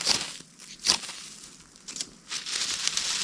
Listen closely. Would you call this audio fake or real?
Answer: real